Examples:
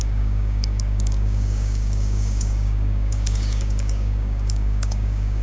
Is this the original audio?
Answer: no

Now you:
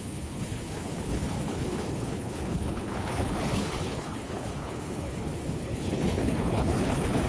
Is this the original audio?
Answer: no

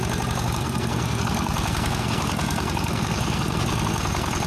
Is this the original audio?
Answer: no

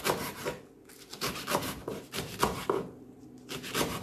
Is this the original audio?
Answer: yes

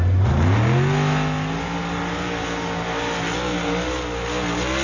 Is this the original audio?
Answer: yes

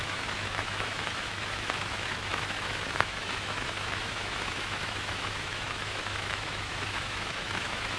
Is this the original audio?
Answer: no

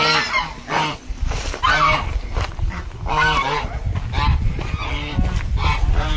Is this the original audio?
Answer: yes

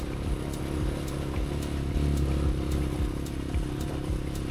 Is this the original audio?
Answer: yes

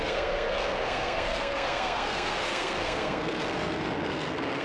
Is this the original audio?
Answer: no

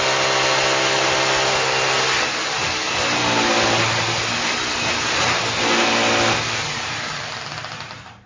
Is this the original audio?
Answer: yes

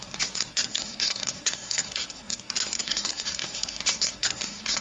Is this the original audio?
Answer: no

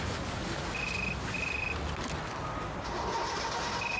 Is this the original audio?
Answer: yes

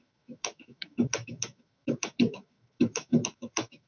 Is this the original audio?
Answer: no